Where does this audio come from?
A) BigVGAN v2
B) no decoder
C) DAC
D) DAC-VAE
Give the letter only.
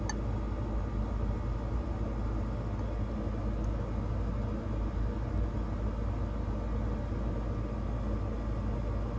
B